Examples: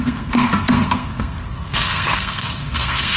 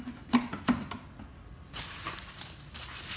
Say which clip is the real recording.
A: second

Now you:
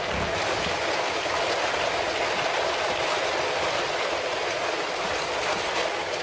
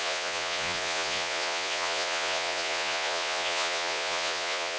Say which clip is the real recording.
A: first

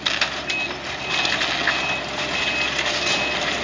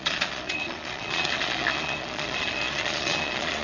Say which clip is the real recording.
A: first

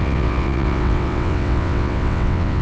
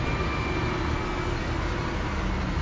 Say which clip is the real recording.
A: second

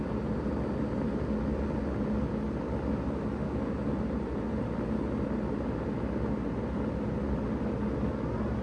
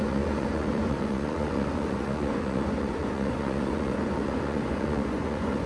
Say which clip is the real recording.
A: first